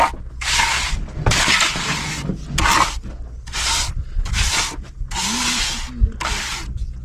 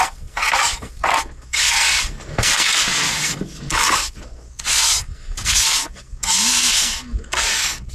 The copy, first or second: second